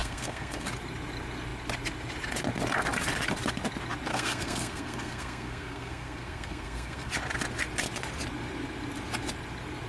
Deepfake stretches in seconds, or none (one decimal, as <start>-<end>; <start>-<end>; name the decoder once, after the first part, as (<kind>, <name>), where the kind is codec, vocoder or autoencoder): 0.0-0.7 (codec, SNAC); 4.1-7.1